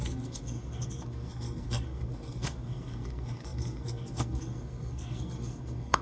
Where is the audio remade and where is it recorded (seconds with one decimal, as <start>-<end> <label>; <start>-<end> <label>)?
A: 0.0-6.0 remade